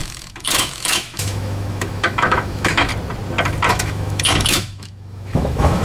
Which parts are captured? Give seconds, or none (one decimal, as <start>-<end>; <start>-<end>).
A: 2.9-3.7